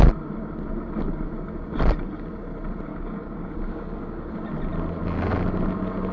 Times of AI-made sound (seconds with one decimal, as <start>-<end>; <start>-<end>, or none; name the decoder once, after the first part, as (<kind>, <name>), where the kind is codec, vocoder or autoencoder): 2.9-4.3 (codec, DAC)